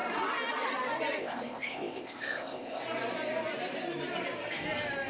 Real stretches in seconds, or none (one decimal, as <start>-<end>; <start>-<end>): 0.0-1.2; 2.8-5.1